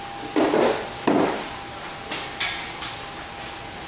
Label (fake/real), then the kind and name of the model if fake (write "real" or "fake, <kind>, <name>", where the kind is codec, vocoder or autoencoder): real